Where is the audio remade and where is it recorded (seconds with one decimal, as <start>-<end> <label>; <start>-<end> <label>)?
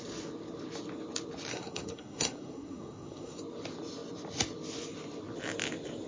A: 0.0-1.5 recorded; 1.5-3.4 remade; 3.4-6.1 recorded